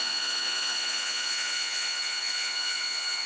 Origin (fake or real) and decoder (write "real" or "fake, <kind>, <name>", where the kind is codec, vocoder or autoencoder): fake, vocoder, Vocos